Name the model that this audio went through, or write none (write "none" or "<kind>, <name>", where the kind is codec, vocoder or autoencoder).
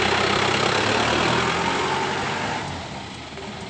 none